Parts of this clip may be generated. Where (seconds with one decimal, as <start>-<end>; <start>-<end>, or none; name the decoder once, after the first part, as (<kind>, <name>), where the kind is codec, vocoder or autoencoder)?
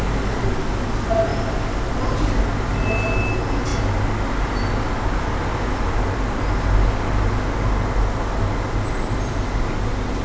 none